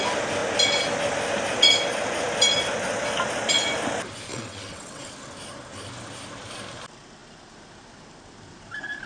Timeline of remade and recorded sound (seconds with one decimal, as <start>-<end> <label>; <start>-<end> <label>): 0.0-4.3 recorded; 4.3-5.1 remade; 5.1-9.1 recorded